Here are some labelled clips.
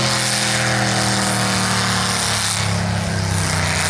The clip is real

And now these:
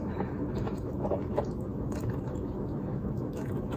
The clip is fake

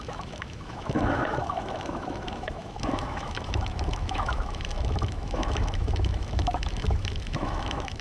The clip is fake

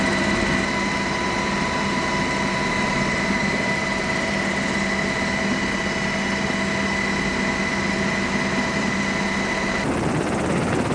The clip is real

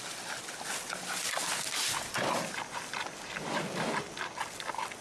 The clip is real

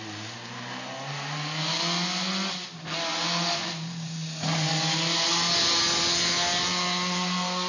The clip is real